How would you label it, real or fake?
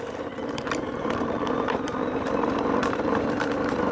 fake